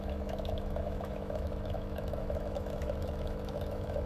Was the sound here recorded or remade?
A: remade